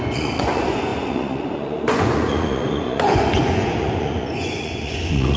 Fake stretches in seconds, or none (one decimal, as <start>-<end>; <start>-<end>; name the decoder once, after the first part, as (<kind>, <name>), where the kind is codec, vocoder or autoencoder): 0.0-5.4 (vocoder, Vocos)